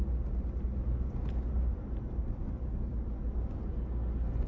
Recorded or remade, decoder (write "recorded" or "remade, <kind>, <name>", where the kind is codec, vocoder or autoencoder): recorded